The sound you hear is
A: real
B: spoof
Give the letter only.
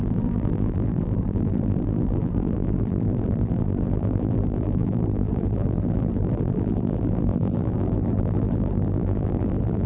B